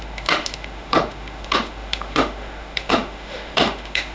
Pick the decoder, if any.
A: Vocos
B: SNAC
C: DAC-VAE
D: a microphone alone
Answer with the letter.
C